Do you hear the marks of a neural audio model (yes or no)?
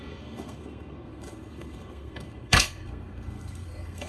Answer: yes